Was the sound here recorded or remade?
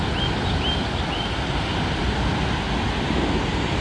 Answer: recorded